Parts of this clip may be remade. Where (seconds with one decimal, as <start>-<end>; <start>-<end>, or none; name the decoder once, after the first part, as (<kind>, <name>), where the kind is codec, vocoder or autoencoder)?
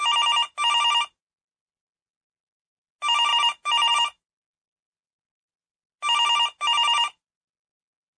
3.3-3.9 (vocoder, BigVGAN v2)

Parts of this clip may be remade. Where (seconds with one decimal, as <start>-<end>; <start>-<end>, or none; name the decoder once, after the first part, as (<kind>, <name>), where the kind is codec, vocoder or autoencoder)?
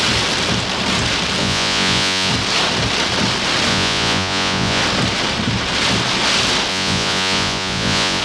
1.4-2.3 (vocoder, Vocos); 3.7-4.8; 6.7-8.2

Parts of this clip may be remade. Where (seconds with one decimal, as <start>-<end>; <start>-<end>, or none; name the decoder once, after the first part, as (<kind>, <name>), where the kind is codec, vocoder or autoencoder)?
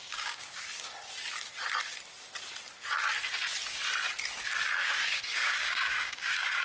0.0-0.6 (codec, DAC); 4.8-6.6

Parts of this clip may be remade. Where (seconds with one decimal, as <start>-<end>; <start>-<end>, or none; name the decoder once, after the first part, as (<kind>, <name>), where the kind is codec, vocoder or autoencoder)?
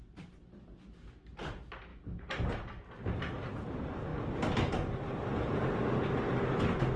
none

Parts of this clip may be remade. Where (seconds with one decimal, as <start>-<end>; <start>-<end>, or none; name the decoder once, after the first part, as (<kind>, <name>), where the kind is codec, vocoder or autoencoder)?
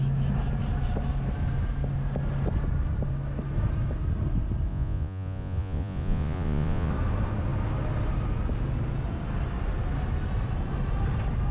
4.7-6.9 (vocoder, Vocos)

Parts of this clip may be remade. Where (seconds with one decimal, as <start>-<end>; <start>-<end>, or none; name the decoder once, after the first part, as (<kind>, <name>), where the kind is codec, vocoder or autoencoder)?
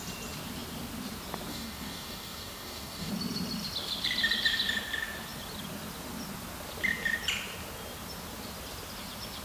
1.5-3.1 (codec, DAC)